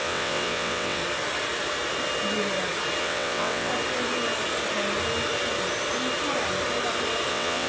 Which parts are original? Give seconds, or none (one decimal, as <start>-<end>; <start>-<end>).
1.0-3.0; 3.7-7.3